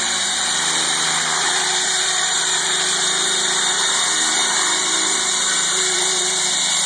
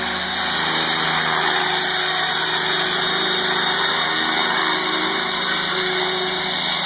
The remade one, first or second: first